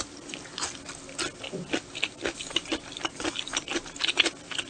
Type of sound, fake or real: real